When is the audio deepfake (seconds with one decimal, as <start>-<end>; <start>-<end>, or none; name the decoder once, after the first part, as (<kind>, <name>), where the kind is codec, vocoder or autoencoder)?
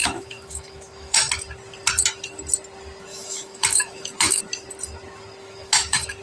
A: 0.0-1.3 (autoencoder, DAC-VAE); 3.1-4.4; 5.4-6.2